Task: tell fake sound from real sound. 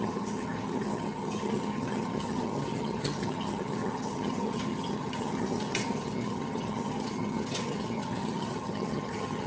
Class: fake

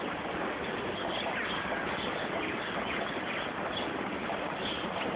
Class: real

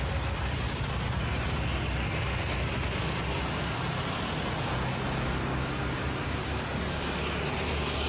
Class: real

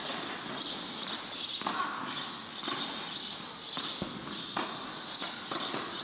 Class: real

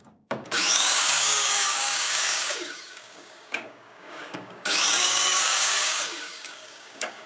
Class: fake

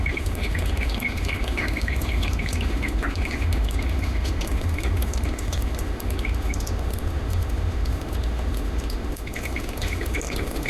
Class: fake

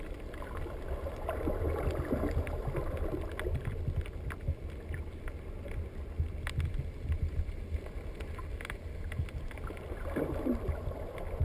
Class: real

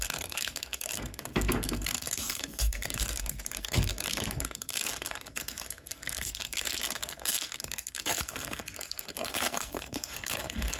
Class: fake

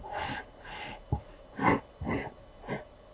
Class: real